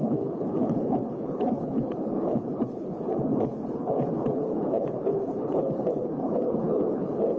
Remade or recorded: remade